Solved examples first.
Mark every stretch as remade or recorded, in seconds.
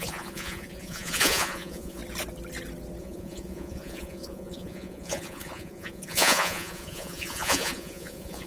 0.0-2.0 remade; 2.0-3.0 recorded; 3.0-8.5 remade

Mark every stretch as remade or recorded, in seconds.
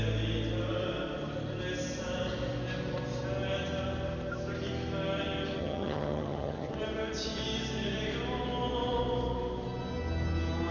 0.0-5.6 recorded; 5.6-6.7 remade; 6.7-10.7 recorded